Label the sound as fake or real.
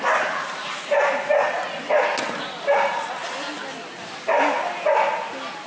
real